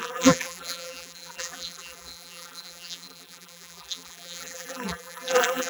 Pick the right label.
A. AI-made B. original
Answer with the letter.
A